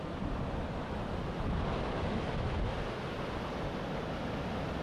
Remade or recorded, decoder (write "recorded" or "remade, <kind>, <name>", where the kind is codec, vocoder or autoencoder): recorded